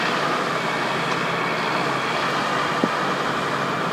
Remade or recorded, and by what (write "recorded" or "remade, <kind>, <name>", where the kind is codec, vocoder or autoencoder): recorded